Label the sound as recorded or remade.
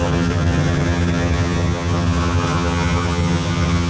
remade